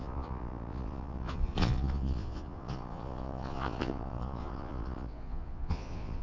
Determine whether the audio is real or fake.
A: fake